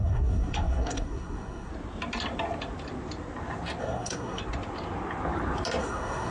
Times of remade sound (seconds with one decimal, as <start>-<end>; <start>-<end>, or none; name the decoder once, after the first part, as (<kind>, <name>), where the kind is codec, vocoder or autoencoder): 0.0-1.7 (codec, SNAC); 3.8-4.4; 5.8-6.3